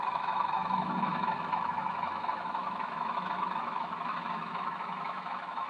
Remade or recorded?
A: remade